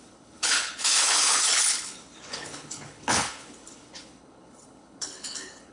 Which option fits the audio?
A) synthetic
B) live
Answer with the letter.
A